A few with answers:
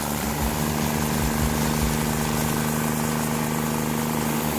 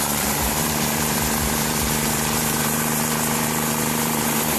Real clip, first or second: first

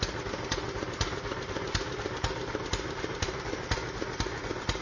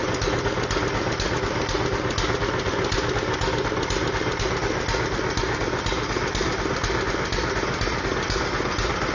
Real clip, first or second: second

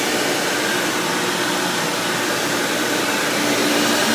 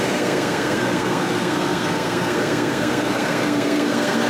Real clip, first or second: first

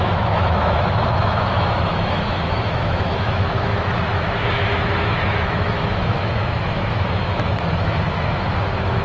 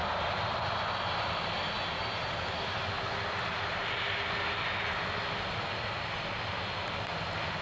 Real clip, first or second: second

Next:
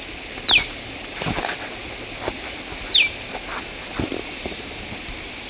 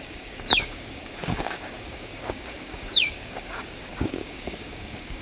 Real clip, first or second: first